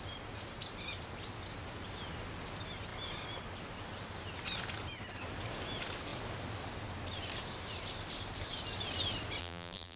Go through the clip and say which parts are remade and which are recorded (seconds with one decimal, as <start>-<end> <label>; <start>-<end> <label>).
0.0-9.4 recorded; 9.4-10.0 remade